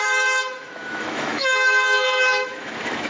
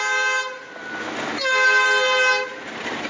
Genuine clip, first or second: second